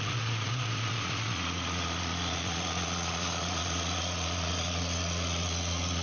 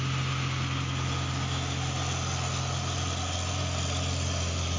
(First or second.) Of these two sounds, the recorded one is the second